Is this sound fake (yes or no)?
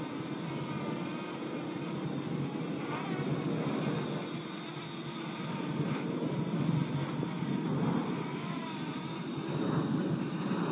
no